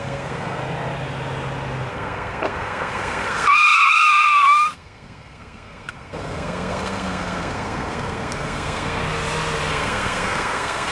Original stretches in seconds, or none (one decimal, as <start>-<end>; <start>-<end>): 0.6-1.9; 9.0-9.7